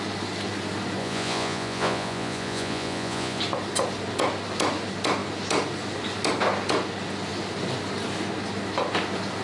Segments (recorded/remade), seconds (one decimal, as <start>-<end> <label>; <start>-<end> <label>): 0.0-1.0 recorded; 1.0-3.4 remade; 3.4-9.4 recorded